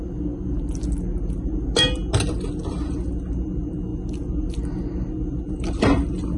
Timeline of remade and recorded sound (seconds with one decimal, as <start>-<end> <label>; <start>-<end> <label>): 0.0-6.4 recorded